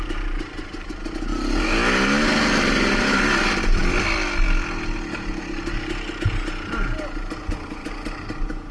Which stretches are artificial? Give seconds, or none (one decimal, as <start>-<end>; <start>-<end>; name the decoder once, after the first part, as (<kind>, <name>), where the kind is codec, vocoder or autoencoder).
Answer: none